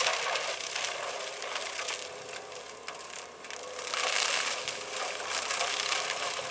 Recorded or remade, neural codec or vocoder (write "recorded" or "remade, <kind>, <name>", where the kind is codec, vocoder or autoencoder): recorded